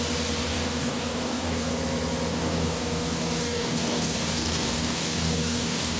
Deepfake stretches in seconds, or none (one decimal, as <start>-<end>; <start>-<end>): 0.5-1.7; 2.3-6.0